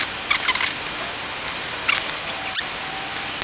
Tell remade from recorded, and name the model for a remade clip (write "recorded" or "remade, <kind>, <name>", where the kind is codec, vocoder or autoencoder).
recorded